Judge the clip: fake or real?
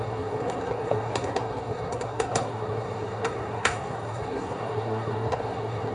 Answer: fake